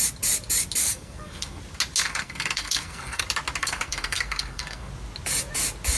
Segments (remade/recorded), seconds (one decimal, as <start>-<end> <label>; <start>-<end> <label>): 0.0-0.8 recorded; 0.8-1.6 remade; 1.6-2.0 recorded; 2.0-3.2 remade; 3.2-3.6 recorded; 3.6-4.9 remade; 4.9-6.0 recorded